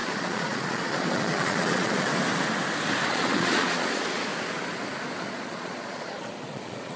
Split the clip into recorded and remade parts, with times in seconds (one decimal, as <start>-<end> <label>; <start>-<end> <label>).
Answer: 0.0-2.1 remade; 2.1-3.1 recorded; 3.1-4.3 remade; 4.3-5.2 recorded; 5.2-7.0 remade